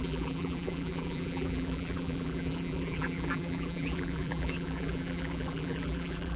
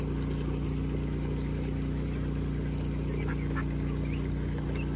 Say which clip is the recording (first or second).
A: second